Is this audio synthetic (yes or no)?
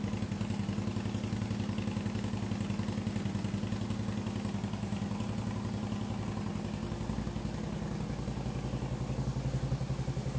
no